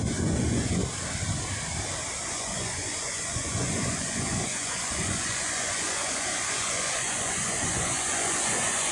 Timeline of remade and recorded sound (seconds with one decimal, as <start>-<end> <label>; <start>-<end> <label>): 0.0-0.8 remade; 0.8-2.3 recorded; 2.3-8.9 remade